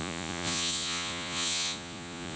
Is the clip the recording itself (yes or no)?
no